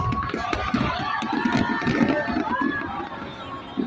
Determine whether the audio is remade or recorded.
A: recorded